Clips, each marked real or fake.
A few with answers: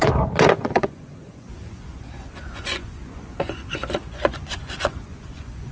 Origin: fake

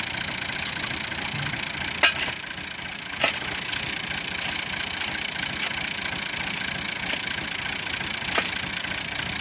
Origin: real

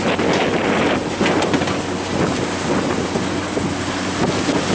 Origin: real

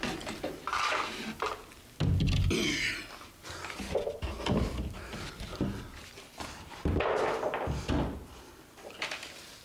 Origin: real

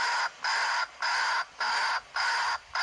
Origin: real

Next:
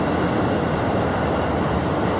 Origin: real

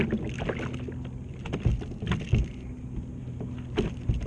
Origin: real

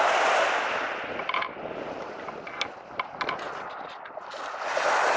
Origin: real